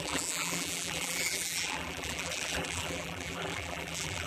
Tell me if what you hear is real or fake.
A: fake